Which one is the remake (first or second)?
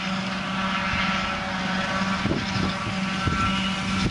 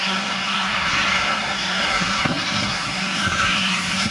second